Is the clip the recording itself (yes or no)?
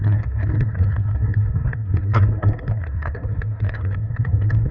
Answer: no